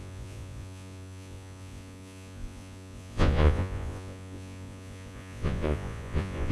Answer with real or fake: fake